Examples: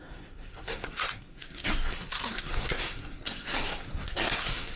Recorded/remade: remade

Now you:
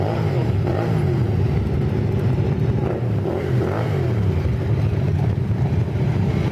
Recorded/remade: recorded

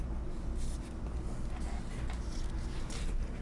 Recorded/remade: recorded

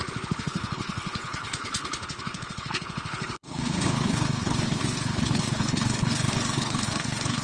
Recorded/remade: remade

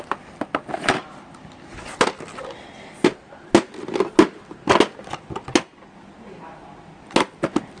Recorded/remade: recorded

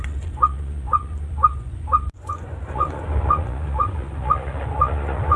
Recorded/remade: remade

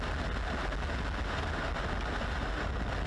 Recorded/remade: recorded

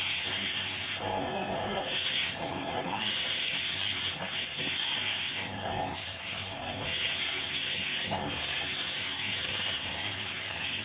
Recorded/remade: remade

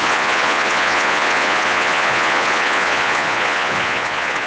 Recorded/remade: remade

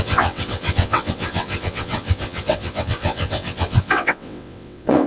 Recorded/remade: remade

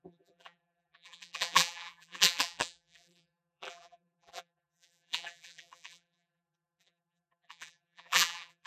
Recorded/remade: remade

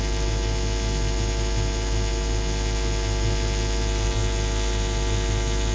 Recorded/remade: recorded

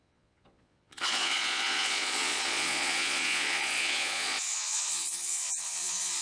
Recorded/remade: remade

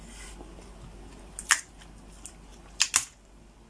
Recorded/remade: recorded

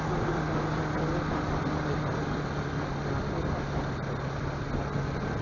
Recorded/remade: recorded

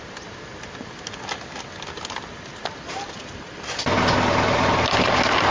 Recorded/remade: recorded